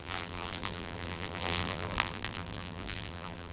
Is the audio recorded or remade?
remade